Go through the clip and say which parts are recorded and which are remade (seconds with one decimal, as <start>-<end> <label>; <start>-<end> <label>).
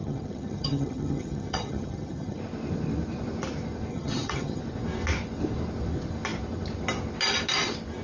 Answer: 0.0-2.4 remade; 2.4-3.9 recorded; 3.9-4.6 remade; 4.6-8.0 recorded